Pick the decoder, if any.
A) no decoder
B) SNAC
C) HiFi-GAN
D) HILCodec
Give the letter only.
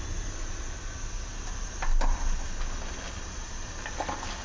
A